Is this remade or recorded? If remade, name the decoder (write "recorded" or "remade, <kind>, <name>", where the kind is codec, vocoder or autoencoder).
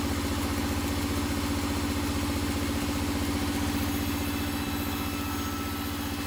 recorded